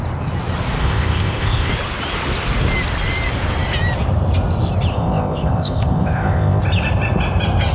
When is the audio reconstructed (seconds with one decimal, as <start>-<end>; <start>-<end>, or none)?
0.8-1.7; 4.9-6.6